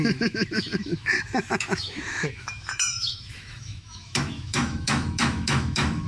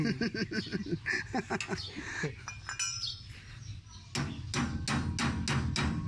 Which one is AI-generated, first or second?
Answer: first